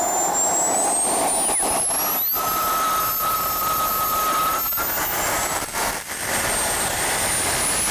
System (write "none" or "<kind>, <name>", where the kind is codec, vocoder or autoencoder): none